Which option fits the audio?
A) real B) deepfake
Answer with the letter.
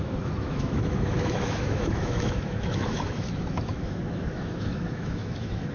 B